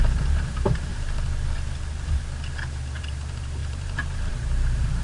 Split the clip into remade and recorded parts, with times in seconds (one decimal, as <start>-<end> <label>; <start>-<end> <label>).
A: 0.0-0.9 remade; 0.9-3.0 recorded; 3.0-5.0 remade